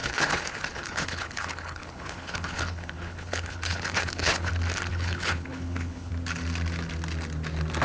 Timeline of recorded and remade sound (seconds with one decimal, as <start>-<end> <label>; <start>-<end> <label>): 0.0-4.5 remade; 4.5-4.9 recorded; 4.9-6.1 remade; 6.1-7.8 recorded